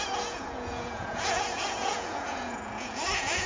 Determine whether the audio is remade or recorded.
remade